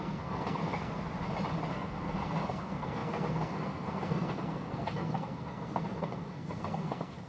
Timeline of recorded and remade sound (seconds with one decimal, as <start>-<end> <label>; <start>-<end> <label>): 0.0-1.1 remade; 1.1-1.7 recorded; 1.7-7.3 remade